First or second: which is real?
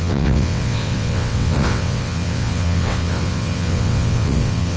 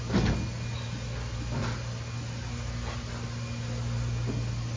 second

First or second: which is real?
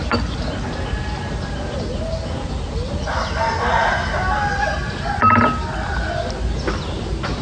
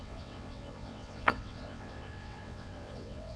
first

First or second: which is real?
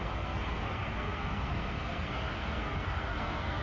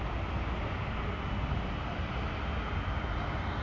second